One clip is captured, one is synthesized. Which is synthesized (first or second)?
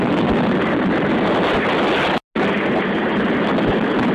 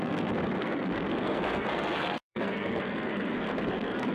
second